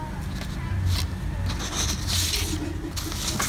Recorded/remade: recorded